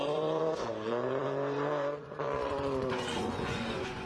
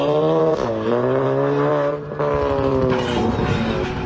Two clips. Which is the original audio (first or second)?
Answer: second